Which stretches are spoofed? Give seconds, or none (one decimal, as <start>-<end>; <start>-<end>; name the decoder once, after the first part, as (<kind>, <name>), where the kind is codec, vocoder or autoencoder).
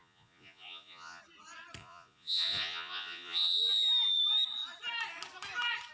0.0-1.2 (vocoder, Vocos); 1.8-3.6